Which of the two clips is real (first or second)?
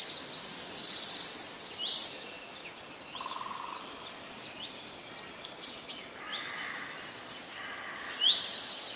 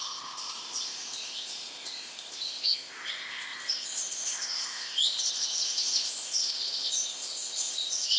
first